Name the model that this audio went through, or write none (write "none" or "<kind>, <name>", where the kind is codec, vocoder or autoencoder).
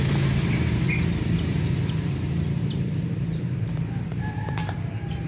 vocoder, BigVGAN v2